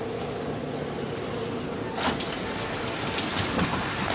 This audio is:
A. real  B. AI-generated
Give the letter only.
A